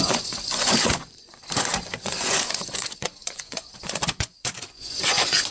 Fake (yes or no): yes